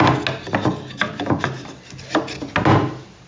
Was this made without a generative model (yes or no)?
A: yes